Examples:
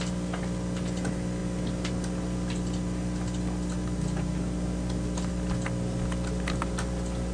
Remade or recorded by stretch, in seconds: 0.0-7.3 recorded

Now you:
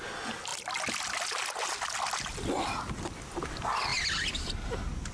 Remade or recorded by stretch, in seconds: 0.0-5.1 recorded

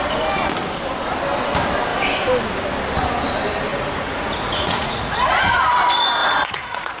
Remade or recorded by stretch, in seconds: 0.0-3.7 recorded; 3.7-5.7 remade; 5.7-6.2 recorded; 6.2-7.0 remade

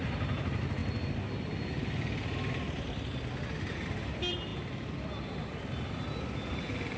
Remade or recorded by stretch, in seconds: 0.0-7.0 recorded

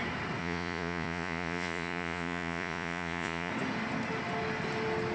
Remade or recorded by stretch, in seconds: 0.0-0.4 recorded; 0.4-3.5 remade; 3.5-5.1 recorded

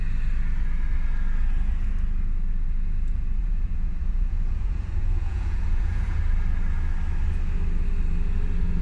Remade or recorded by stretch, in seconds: 0.0-3.4 recorded; 3.4-6.2 remade; 6.2-8.8 recorded

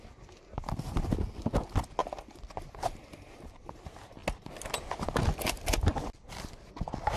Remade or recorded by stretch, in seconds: 0.0-7.2 recorded